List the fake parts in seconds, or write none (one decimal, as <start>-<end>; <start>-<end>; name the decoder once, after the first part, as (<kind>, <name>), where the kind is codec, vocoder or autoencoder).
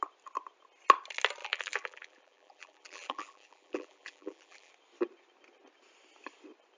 1.4-4.7 (vocoder, BigVGAN v2)